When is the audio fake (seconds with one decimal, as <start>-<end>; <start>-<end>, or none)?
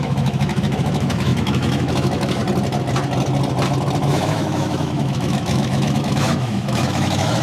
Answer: 0.0-2.4; 4.0-7.4